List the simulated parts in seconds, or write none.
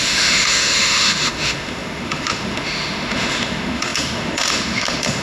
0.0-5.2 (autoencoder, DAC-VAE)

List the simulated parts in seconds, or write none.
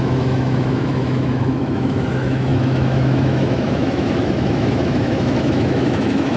0.0-6.4 (autoencoder, DAC-VAE)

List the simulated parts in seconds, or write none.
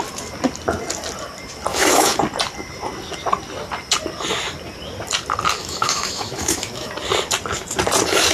1.7-2.2 (autoencoder, DAC-VAE); 5.6-6.9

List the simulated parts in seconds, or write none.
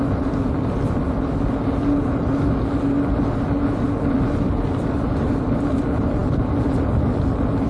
none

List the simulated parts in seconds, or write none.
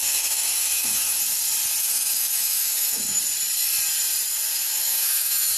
0.0-1.2 (autoencoder, DAC-VAE); 1.8-3.2; 4.5-5.6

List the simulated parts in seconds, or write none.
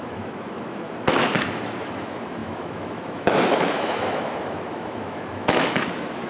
0.0-6.3 (autoencoder, DAC-VAE)